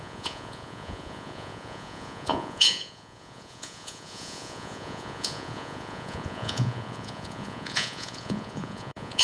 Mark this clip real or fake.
fake